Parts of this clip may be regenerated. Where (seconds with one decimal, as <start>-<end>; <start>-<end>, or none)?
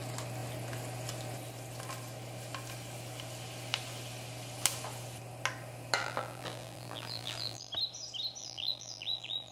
6.0-7.7; 8.4-9.5